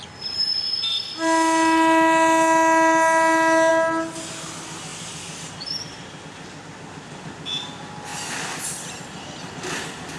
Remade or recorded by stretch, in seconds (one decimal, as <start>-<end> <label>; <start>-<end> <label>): 0.0-10.2 recorded